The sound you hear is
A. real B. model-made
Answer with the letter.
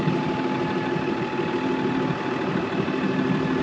A